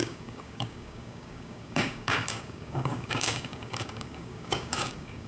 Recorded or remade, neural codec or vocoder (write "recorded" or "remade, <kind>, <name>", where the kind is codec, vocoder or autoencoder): remade, codec, DAC